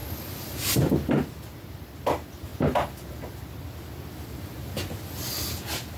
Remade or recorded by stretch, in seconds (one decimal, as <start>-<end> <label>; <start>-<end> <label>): 0.0-6.0 recorded